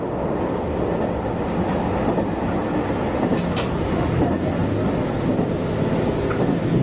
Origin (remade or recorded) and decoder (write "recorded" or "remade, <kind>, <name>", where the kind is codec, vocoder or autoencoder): recorded